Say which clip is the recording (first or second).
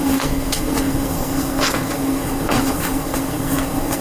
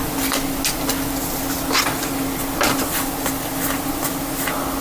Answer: second